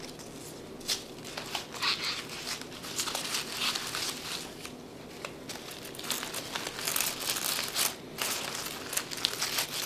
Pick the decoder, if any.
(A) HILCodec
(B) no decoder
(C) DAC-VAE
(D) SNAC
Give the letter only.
B